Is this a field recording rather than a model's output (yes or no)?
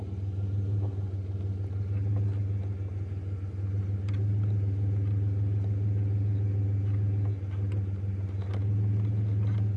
yes